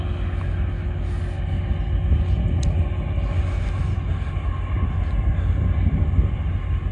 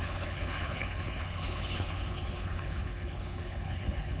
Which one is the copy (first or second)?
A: second